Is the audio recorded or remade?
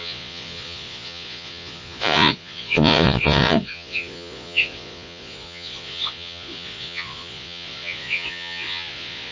remade